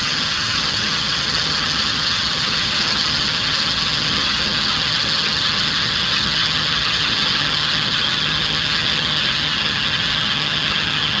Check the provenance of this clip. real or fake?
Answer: fake